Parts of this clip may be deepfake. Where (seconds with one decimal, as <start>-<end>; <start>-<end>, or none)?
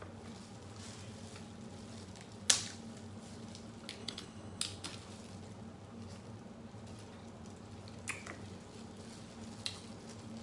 4.0-4.6